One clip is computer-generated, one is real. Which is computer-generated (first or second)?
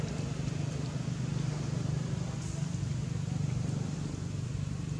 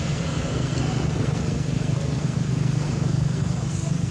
second